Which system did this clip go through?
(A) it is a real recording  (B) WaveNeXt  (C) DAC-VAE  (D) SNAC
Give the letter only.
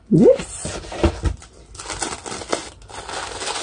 A